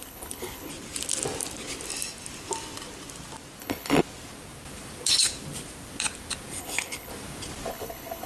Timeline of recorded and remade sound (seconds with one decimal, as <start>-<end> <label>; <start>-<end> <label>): 0.0-0.7 remade; 0.7-3.6 recorded; 3.6-4.0 remade; 4.0-6.6 recorded; 6.6-7.1 remade; 7.1-7.7 recorded; 7.7-8.3 remade